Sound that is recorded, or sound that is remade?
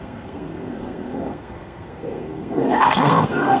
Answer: remade